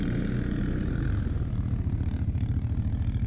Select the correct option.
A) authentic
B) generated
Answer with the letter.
B